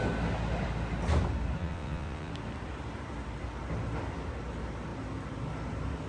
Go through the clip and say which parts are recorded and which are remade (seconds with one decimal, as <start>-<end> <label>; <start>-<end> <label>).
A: 0.0-1.6 recorded; 1.6-2.3 remade; 2.3-6.1 recorded